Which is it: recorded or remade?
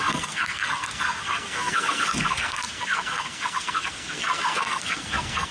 remade